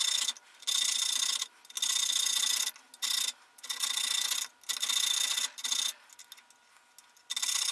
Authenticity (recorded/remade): recorded